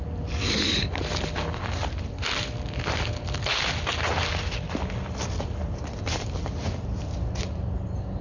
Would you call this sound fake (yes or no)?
no